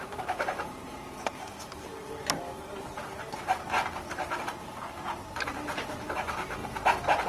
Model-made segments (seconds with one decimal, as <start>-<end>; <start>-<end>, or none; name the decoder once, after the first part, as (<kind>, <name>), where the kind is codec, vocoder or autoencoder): 0.0-1.9 (vocoder, BigVGAN v2); 6.0-6.6